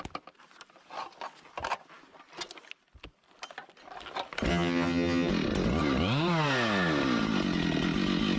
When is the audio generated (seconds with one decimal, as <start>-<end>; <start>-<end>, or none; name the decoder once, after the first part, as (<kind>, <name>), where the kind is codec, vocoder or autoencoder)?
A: 4.5-5.3 (vocoder, HiFi-GAN)